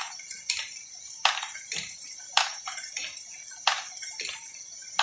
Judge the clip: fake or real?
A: fake